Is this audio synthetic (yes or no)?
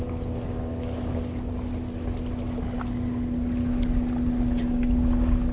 no